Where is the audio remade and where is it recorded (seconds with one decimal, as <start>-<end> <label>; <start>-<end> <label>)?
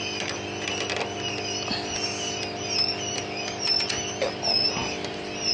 0.0-5.5 recorded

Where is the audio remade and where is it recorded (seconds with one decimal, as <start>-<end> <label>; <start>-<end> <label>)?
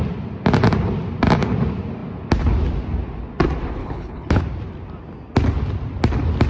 0.0-3.8 recorded; 3.8-4.4 remade; 4.4-6.5 recorded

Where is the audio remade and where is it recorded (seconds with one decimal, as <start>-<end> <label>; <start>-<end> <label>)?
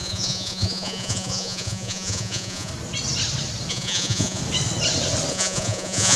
0.0-2.7 remade; 2.7-3.7 recorded; 3.7-4.4 remade; 4.4-5.3 recorded; 5.3-6.2 remade